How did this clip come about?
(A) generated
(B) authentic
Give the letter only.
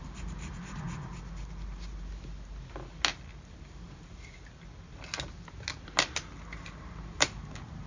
B